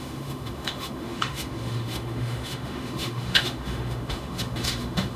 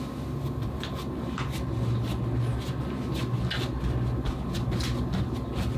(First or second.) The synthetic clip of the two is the first